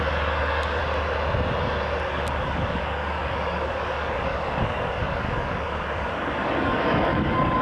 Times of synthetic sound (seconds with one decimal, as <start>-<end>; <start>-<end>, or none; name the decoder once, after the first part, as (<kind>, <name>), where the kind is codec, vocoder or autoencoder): 0.0-0.8 (codec, DAC); 2.1-7.6